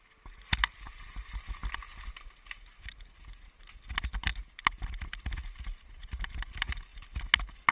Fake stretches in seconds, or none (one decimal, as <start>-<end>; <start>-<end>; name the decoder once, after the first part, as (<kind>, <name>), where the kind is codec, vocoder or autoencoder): none